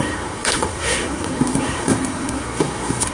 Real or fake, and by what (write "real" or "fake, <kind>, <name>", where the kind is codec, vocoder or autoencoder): fake, codec, SNAC